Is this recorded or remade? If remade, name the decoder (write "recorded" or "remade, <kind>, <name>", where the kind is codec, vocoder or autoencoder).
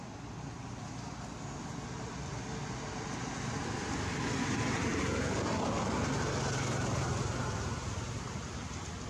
recorded